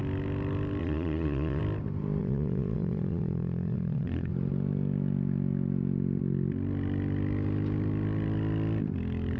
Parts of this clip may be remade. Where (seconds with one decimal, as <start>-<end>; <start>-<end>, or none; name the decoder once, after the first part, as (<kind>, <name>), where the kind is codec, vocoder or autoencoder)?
0.8-1.6 (vocoder, Vocos); 2.2-4.3